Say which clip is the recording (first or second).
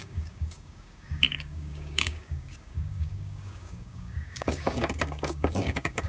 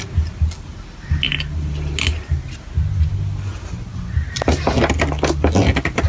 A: second